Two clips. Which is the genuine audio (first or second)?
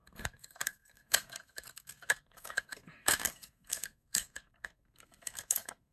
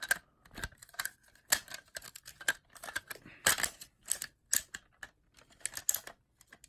second